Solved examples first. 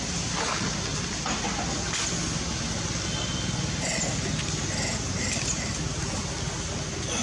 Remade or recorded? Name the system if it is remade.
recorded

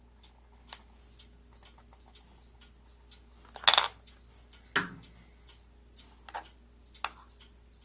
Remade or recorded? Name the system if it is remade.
recorded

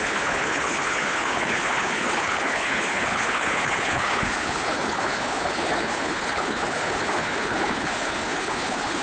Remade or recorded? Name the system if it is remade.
remade, codec, HILCodec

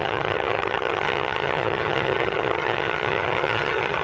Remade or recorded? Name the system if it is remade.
remade, vocoder, HiFi-GAN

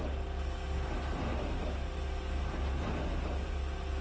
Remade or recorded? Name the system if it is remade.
recorded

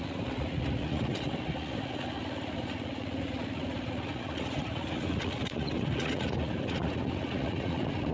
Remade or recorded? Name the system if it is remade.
remade, vocoder, Vocos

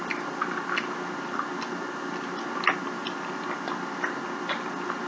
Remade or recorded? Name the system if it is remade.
recorded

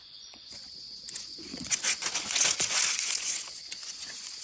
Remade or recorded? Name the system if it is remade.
remade, vocoder, Vocos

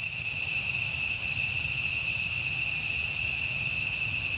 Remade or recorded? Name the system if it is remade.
recorded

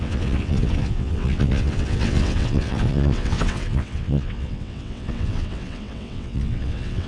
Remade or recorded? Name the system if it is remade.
remade, vocoder, WaveNeXt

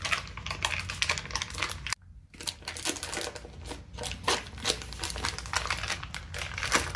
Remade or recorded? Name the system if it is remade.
recorded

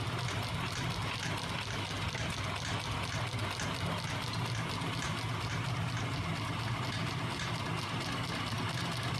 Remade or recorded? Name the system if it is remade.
recorded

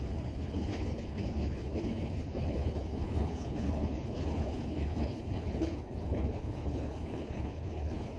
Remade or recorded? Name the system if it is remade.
remade, codec, HILCodec